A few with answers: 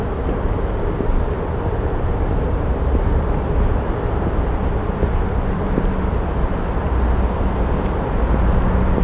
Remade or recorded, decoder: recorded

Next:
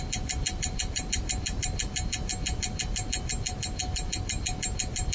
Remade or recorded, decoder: recorded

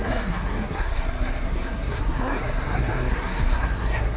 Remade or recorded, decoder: remade, codec, SNAC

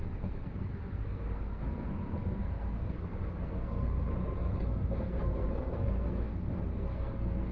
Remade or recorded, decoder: remade, codec, SNAC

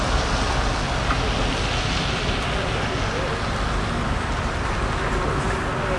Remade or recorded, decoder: recorded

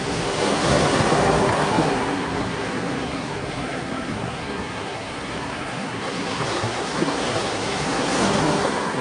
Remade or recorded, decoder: remade, codec, SNAC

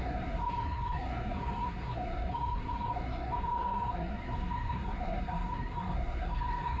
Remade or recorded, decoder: remade, codec, SNAC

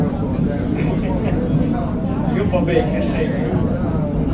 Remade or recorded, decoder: recorded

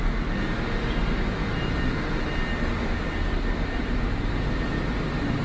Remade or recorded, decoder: recorded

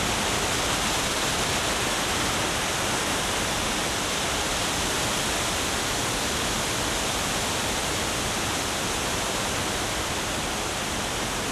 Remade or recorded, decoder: recorded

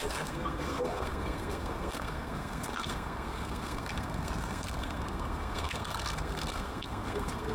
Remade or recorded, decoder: remade, codec, SNAC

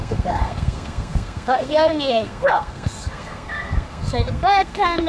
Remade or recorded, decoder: remade, codec, SNAC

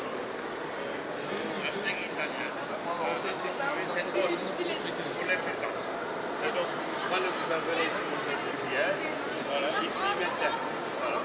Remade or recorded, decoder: recorded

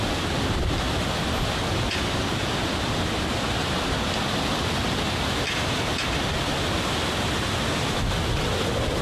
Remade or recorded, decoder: recorded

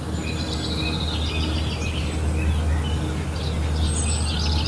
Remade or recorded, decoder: recorded